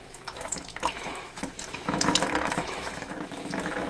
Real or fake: fake